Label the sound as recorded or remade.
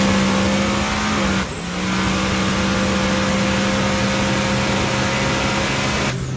recorded